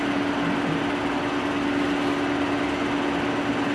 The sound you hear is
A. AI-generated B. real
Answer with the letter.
B